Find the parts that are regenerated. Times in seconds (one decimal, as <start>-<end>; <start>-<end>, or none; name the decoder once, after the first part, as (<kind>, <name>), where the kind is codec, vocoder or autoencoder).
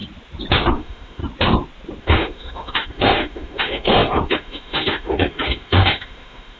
0.7-1.2 (autoencoder, DAC-VAE); 2.0-6.6